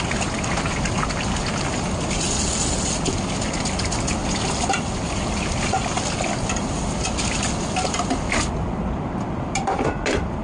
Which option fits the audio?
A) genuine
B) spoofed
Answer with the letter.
A